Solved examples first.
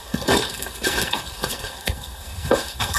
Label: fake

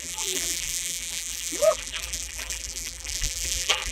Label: fake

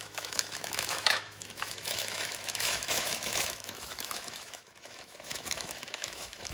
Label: fake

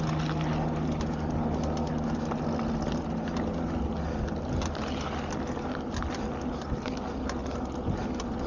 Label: real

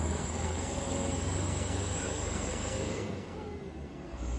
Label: fake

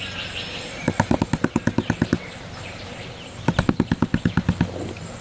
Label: real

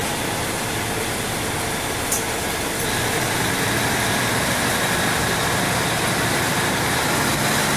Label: real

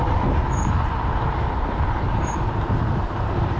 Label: fake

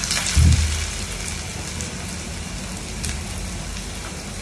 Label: real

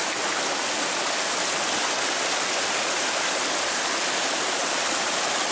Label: real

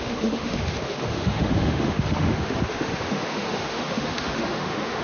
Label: fake